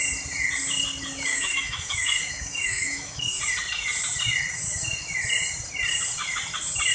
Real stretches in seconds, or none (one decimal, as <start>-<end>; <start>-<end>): 0.0-1.3; 3.4-6.9